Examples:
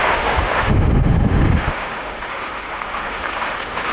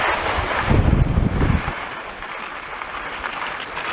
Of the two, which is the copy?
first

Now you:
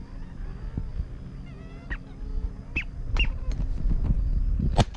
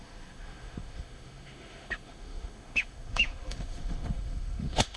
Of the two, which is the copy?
second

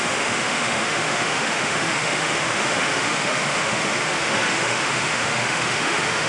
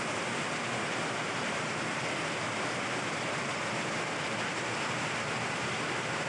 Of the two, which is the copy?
first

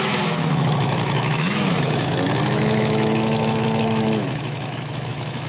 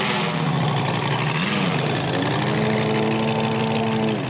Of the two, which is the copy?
first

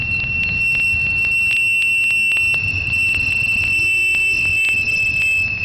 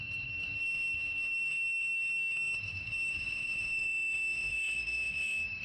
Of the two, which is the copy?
second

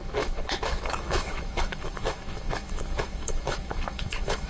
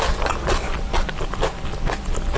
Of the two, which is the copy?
first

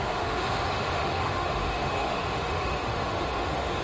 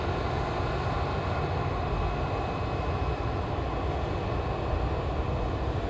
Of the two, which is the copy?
first